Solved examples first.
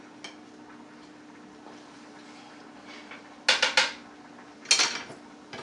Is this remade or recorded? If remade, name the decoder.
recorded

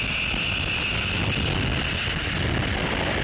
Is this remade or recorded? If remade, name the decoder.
recorded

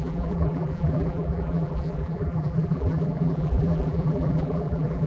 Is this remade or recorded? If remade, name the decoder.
remade, vocoder, BigVGAN v2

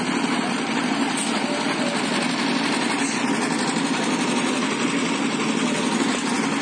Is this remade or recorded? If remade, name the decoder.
recorded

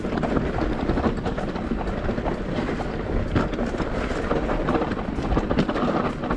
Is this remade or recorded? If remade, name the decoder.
recorded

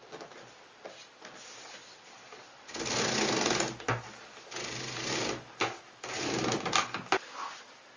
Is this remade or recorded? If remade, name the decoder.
recorded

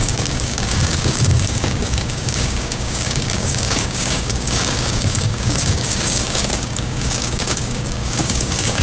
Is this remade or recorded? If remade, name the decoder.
remade, codec, DAC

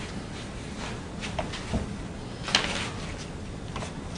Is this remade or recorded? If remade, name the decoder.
recorded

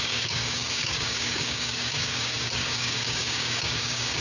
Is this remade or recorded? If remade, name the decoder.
remade, codec, DAC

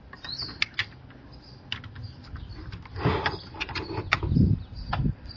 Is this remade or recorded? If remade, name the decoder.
recorded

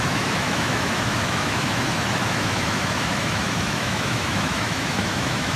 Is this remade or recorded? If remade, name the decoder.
remade, autoencoder, DAC-VAE